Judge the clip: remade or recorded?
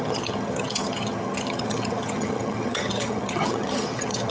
remade